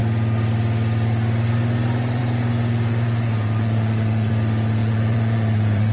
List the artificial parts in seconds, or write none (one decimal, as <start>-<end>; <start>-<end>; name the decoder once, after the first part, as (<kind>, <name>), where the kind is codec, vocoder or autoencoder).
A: 2.9-4.3 (vocoder, Vocos); 4.8-5.9